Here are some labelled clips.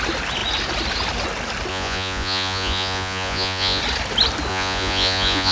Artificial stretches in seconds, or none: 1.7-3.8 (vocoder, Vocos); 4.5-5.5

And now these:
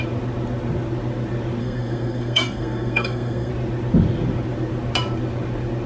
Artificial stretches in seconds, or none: 1.6-3.5 (codec, SNAC)

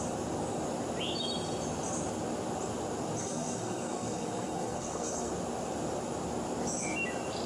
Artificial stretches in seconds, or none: 3.2-5.3 (codec, SNAC)